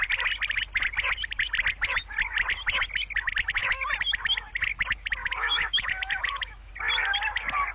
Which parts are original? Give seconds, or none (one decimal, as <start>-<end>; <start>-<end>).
0.0-5.2; 6.7-7.7